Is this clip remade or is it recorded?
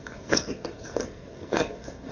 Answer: remade